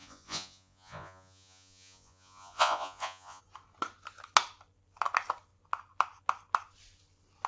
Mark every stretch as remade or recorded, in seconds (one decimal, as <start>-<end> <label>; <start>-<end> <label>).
0.0-3.4 remade; 3.4-7.5 recorded

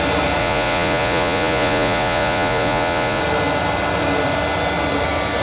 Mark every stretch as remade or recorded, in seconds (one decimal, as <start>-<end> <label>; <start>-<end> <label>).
0.0-0.4 recorded; 0.4-3.2 remade; 3.2-5.4 recorded

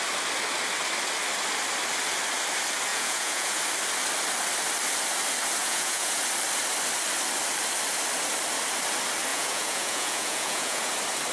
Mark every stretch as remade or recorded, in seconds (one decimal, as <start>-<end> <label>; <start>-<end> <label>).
0.0-2.9 recorded; 2.9-3.6 remade; 3.6-5.6 recorded; 5.6-6.2 remade; 6.2-9.3 recorded; 9.3-10.9 remade; 10.9-11.3 recorded

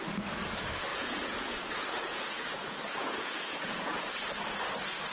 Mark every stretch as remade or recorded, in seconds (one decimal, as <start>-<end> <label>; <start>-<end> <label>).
0.0-0.9 recorded; 0.9-4.0 remade; 4.0-5.1 recorded